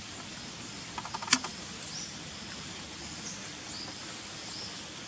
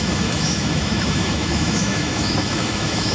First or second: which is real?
first